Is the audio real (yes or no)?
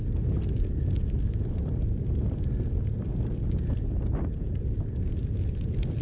yes